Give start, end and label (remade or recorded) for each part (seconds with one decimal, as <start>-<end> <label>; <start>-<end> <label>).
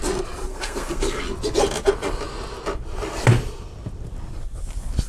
0.0-0.5 recorded; 0.5-1.2 remade; 1.2-5.1 recorded